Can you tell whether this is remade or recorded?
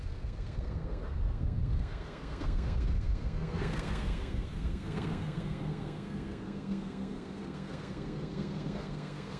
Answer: remade